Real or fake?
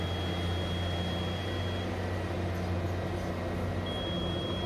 real